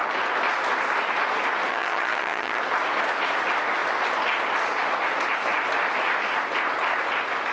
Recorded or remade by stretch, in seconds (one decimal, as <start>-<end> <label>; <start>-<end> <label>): 0.0-1.7 recorded; 1.7-2.6 remade; 2.6-7.5 recorded